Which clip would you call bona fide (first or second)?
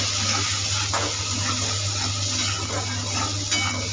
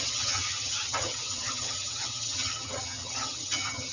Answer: first